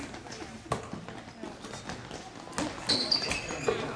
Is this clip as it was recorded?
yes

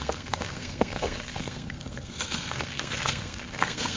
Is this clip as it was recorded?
no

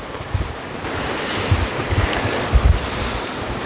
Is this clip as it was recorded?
yes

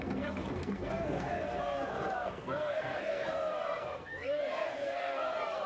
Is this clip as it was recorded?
no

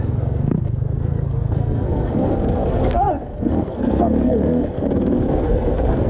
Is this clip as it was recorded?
no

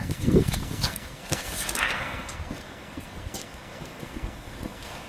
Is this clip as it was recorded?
no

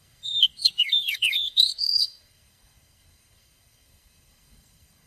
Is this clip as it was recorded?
no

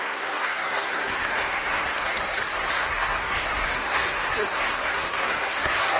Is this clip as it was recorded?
no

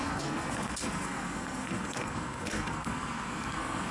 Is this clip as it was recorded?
no